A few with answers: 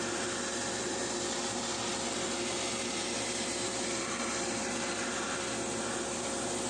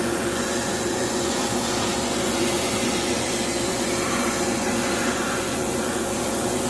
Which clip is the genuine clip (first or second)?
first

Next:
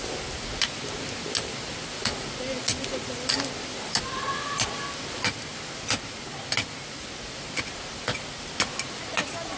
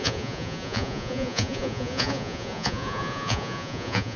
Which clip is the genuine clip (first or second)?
first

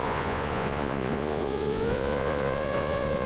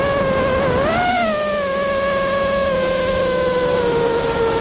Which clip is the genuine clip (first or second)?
second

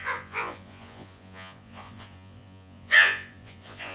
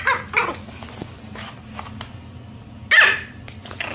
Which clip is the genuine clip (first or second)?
second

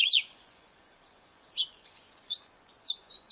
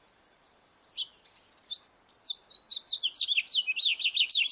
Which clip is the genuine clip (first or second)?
second